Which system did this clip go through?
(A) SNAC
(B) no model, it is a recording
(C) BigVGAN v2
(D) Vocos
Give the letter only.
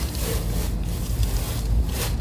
B